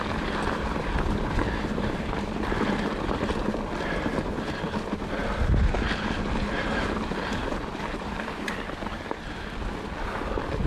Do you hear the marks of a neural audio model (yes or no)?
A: no